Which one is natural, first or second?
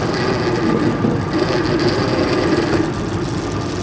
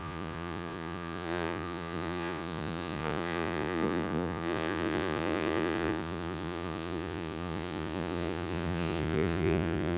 first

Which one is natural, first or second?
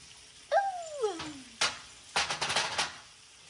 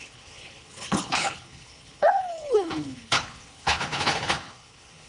first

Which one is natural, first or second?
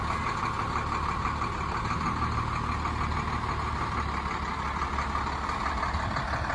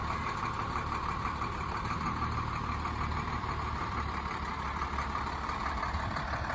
first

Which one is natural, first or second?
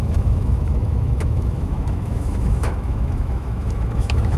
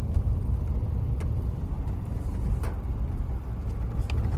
second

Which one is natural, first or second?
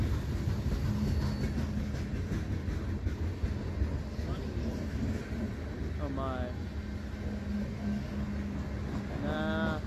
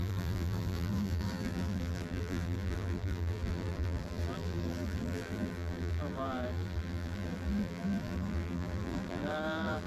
first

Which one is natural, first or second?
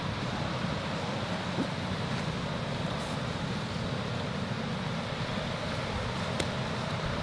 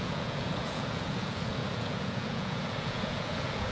first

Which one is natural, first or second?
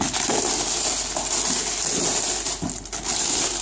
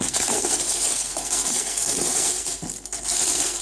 first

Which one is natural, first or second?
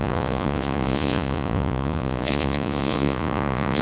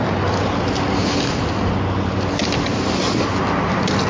second